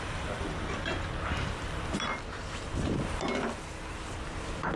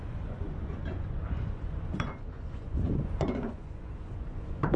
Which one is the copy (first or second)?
second